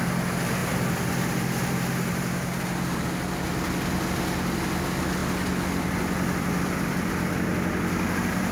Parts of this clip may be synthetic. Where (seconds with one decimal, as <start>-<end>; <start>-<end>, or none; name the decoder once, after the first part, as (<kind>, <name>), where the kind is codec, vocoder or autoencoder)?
none